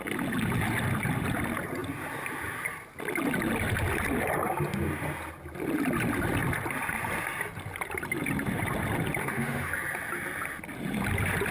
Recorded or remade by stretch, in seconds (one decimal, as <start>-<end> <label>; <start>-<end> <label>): 0.0-9.2 recorded; 9.2-9.7 remade; 9.7-11.5 recorded